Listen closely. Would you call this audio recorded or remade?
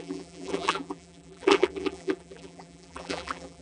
remade